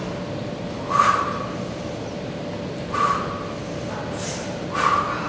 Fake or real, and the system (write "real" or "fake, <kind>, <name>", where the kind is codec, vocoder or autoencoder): real